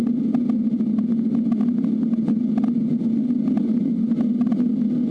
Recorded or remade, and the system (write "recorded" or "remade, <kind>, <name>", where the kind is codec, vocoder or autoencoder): recorded